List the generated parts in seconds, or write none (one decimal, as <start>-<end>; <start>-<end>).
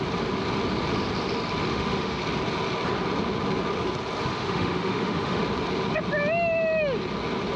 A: 1.7-2.2; 4.3-5.4